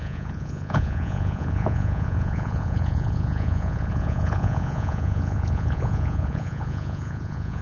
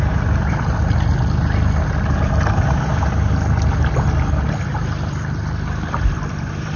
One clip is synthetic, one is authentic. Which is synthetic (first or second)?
first